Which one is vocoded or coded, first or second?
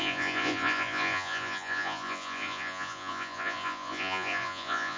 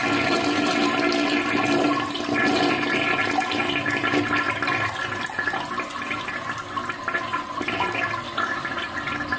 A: first